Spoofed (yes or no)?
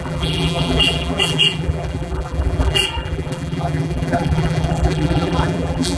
yes